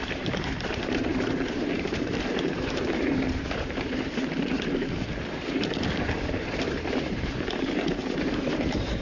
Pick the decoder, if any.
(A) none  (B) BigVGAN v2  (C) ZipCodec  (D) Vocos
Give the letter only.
B